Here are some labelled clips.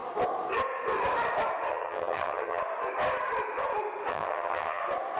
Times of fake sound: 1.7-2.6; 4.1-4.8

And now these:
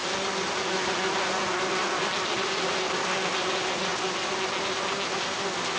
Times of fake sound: none

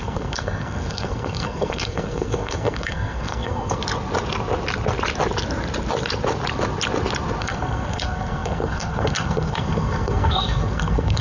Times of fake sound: 0.0-3.8; 7.4-11.2

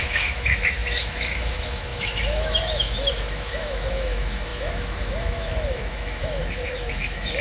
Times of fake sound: 0.0-7.4